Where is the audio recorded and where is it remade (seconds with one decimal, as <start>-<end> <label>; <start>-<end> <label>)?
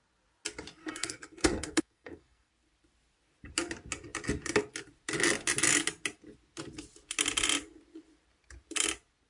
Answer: 0.0-0.8 recorded; 0.8-2.5 remade; 2.5-9.3 recorded